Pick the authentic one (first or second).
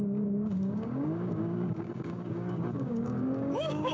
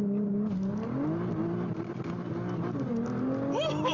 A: second